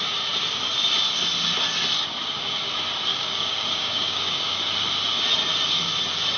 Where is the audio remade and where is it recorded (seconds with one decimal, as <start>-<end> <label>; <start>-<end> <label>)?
0.0-3.1 recorded; 3.1-4.6 remade; 4.6-6.4 recorded